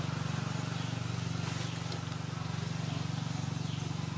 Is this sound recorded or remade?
recorded